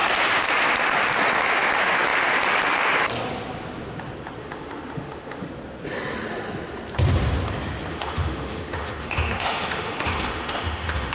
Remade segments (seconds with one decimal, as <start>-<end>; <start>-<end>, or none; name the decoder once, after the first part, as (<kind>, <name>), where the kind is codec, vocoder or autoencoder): 4.4-5.5 (autoencoder, DAC-VAE); 7.9-11.1